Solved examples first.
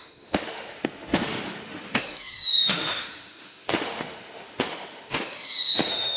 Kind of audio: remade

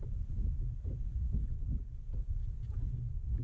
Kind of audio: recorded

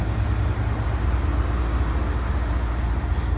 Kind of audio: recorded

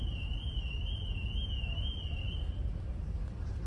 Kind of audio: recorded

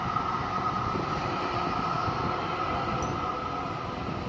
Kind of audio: recorded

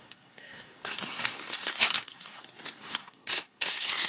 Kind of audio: remade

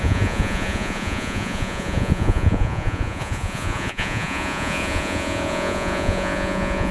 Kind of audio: remade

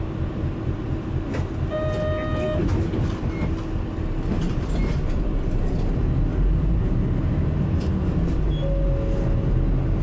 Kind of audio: recorded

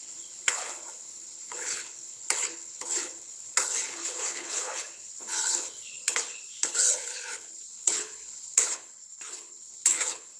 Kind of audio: remade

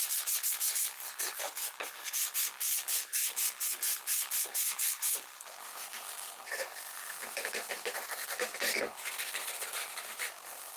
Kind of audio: remade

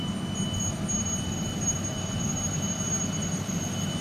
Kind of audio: recorded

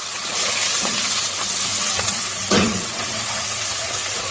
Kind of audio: remade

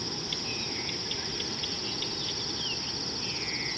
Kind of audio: recorded